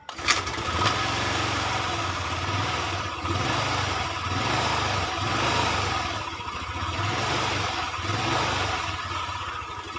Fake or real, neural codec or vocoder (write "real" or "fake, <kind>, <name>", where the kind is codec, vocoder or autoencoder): fake, vocoder, BigVGAN v2